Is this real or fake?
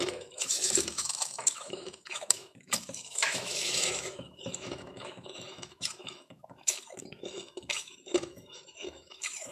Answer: fake